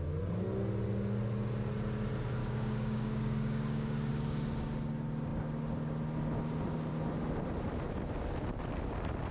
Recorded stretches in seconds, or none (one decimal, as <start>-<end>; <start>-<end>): 0.0-2.4; 4.1-9.3